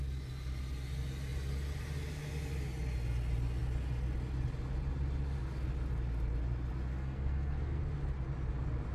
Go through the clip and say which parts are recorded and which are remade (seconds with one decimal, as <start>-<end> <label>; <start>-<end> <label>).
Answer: 0.0-6.9 recorded; 6.9-7.8 remade; 7.8-8.9 recorded